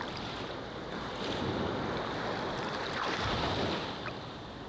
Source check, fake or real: real